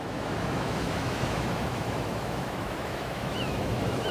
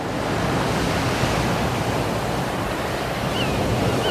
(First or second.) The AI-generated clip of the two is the first